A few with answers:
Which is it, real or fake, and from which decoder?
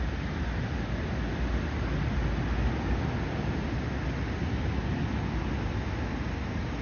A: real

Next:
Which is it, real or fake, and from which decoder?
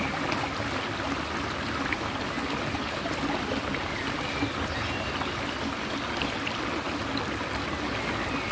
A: real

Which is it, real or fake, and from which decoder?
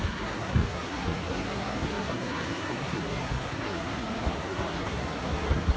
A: fake, codec, SNAC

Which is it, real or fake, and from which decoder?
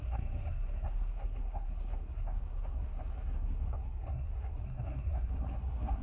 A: fake, codec, SNAC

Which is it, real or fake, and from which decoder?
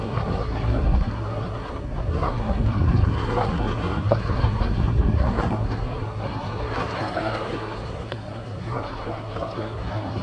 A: fake, codec, SNAC